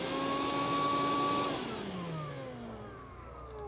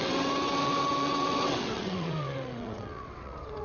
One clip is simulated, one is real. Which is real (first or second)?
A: first